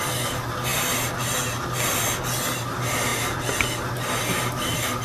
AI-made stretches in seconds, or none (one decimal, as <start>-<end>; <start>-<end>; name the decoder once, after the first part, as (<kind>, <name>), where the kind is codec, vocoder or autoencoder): 0.0-0.7 (vocoder, BigVGAN v2); 1.5-3.1; 3.8-5.0